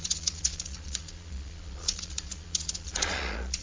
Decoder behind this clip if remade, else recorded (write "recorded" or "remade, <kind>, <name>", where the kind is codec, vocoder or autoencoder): remade, vocoder, Vocos